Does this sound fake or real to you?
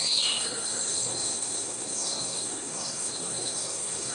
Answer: fake